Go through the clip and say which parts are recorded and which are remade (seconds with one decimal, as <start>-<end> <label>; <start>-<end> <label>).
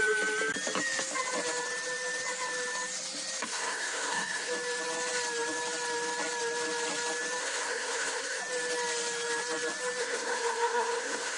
0.0-3.4 recorded; 3.4-4.5 remade; 4.5-7.4 recorded; 7.4-8.4 remade; 8.4-10.0 recorded; 10.0-11.4 remade